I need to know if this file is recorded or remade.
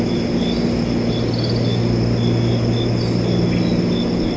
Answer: recorded